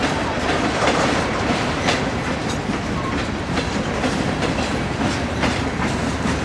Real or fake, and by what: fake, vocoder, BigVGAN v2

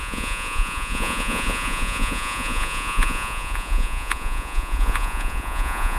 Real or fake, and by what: fake, vocoder, Vocos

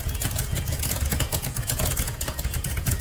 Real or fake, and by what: fake, vocoder, Vocos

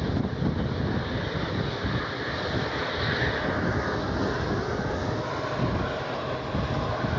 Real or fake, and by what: real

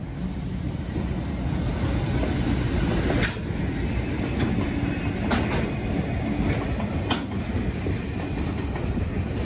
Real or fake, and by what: real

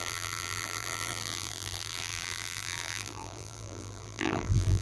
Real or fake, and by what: fake, vocoder, BigVGAN v2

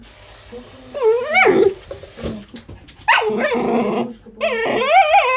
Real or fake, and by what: real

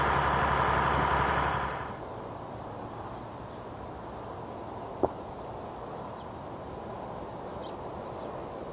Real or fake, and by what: real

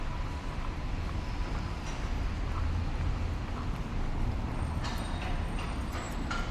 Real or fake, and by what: real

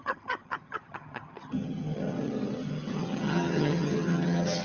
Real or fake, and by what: fake, vocoder, HiFi-GAN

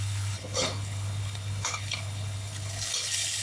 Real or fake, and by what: fake, codec, HILCodec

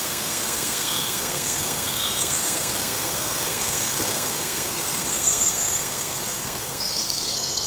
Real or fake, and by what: fake, codec, SNAC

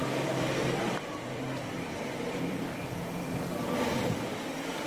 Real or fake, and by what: fake, vocoder, BigVGAN v2